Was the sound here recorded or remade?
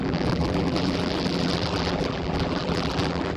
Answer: remade